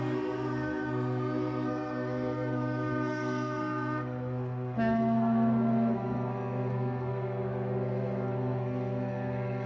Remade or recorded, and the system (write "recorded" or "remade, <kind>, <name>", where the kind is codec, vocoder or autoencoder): remade, codec, SNAC